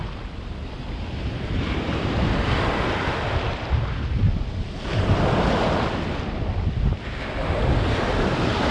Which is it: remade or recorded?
recorded